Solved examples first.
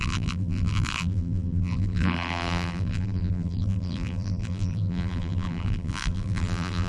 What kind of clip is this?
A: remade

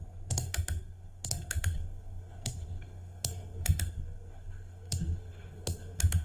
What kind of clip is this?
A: remade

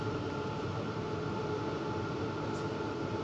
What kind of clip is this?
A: recorded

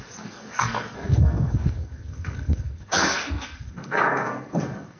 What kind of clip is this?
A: remade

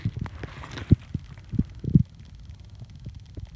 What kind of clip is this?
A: recorded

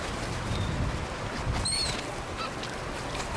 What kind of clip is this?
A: recorded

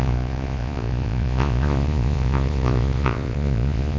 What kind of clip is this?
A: remade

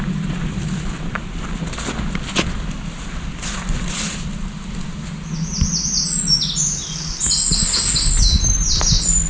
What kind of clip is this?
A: recorded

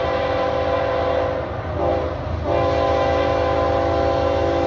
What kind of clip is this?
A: recorded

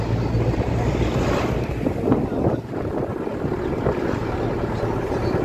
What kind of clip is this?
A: recorded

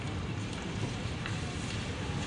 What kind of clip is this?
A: remade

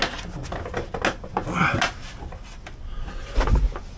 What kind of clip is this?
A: recorded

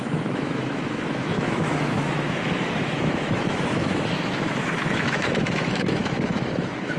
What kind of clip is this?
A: remade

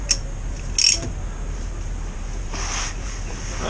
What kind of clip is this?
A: recorded